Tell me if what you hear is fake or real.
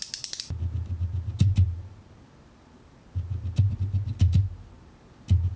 real